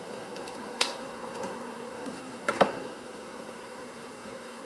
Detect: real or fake fake